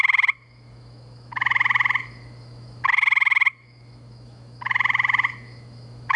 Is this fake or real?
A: fake